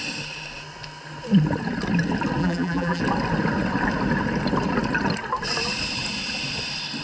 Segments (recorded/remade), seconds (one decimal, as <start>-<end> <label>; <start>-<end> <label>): 0.0-2.4 recorded; 2.4-3.0 remade; 3.0-7.0 recorded